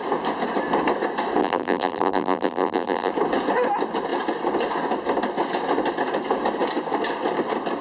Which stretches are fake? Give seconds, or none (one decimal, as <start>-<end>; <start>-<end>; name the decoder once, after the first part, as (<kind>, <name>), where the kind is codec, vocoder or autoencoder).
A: 1.4-3.1 (vocoder, BigVGAN v2)